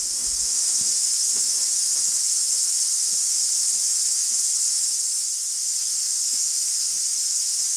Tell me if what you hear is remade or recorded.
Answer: remade